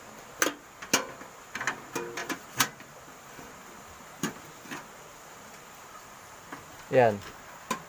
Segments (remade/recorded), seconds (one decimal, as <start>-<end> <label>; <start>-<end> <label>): 0.0-2.2 recorded; 2.2-6.9 remade; 6.9-7.9 recorded